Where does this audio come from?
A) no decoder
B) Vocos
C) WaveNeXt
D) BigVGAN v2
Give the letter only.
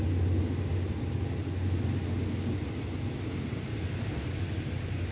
A